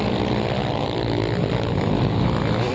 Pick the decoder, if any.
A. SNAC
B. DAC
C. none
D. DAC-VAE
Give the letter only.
C